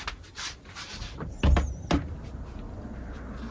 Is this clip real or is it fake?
real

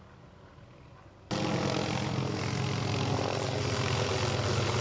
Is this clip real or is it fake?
real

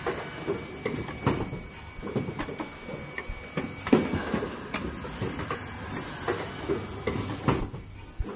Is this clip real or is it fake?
real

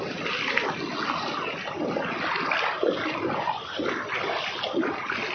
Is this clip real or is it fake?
real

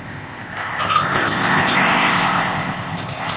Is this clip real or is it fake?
fake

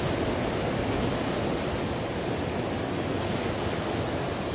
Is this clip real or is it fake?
real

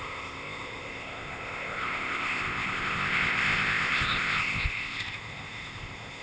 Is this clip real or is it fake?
fake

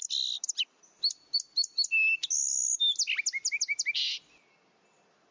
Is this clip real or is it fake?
real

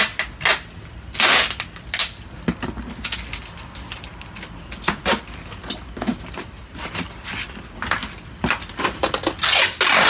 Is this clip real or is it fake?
real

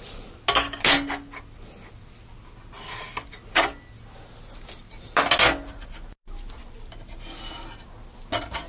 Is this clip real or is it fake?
real